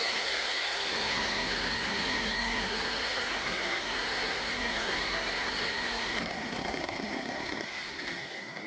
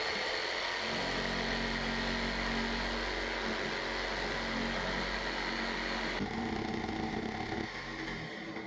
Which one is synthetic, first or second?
first